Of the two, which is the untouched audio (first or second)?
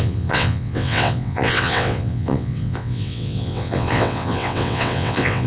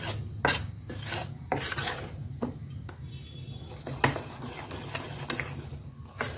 second